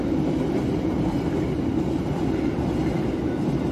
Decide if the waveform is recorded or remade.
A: recorded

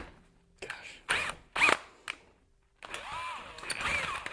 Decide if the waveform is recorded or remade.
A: recorded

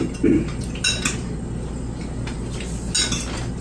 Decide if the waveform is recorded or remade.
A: recorded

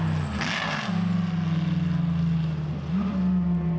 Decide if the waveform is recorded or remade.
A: recorded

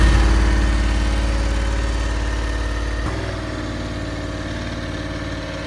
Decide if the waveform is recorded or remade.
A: recorded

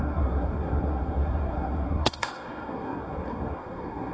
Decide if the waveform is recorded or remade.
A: remade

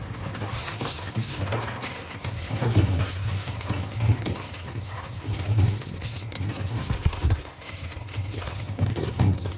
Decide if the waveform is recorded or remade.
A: remade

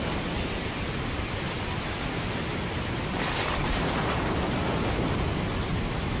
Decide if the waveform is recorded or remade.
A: recorded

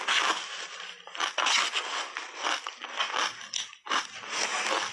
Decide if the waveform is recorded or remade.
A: recorded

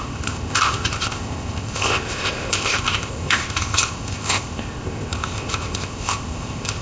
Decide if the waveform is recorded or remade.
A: remade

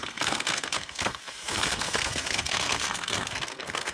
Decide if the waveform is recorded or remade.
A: remade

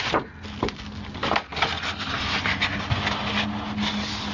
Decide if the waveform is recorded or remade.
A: recorded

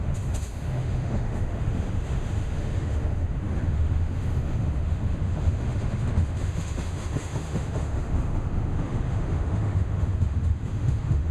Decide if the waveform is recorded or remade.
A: remade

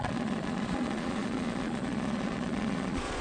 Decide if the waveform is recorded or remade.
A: remade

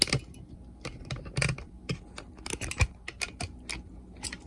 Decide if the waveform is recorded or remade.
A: recorded